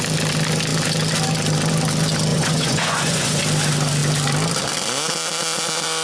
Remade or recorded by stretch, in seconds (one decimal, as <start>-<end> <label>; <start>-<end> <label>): 0.0-2.3 recorded; 2.3-3.4 remade; 3.4-6.0 recorded